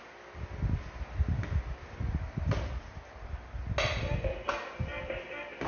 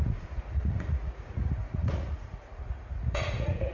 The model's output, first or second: second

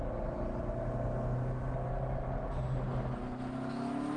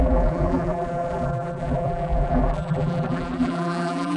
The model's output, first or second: second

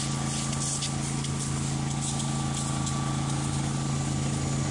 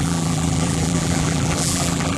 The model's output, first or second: second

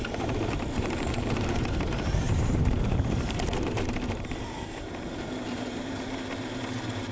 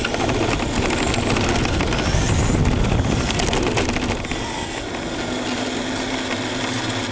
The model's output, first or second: first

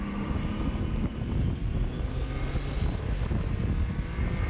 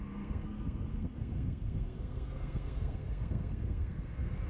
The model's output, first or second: second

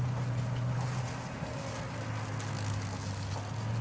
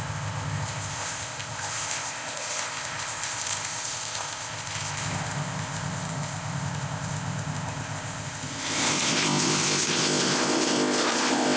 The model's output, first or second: second